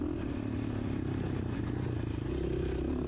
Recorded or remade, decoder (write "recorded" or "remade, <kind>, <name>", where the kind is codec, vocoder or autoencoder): recorded